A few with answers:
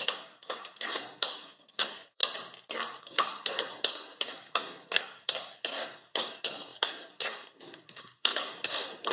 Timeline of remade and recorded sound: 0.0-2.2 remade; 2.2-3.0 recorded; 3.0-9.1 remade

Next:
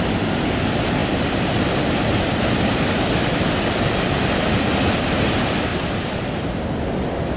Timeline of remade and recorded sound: 0.0-5.7 recorded; 5.7-6.7 remade; 6.7-7.4 recorded

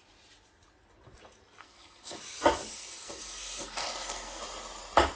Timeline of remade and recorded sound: 0.0-1.6 recorded; 1.6-2.2 remade; 2.2-2.7 recorded; 2.7-4.4 remade; 4.4-5.2 recorded